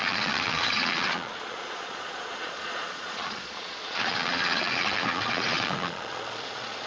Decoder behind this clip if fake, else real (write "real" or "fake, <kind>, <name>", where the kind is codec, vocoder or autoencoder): fake, vocoder, Vocos